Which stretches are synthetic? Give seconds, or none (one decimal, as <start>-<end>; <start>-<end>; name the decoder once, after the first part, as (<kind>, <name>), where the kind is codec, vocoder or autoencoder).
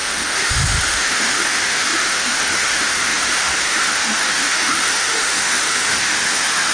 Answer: 0.0-6.7 (autoencoder, DAC-VAE)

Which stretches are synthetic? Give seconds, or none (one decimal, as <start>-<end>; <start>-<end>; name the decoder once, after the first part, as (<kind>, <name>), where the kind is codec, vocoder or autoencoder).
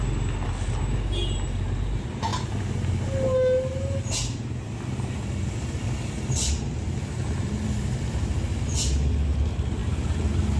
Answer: none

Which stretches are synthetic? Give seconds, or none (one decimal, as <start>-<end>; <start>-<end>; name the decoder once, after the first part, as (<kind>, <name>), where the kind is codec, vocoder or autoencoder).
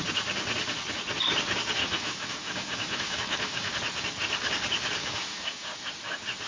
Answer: 1.8-3.7 (autoencoder, DAC-VAE); 5.0-5.7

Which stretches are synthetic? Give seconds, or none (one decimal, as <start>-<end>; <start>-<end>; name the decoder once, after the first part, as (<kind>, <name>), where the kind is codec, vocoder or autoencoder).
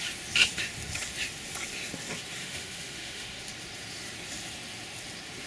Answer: 2.4-3.4 (autoencoder, DAC-VAE)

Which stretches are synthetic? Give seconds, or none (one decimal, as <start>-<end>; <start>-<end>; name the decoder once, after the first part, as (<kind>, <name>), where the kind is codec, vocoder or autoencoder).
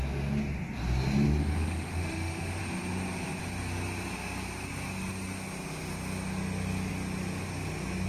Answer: 1.4-2.6 (autoencoder, DAC-VAE)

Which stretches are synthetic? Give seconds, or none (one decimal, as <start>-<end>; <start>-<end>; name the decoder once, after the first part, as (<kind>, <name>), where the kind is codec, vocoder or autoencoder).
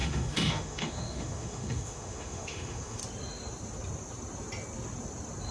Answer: 0.0-3.0 (autoencoder, DAC-VAE)